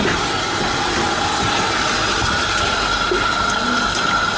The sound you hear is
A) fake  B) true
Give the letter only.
B